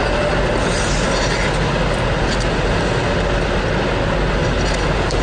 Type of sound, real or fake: real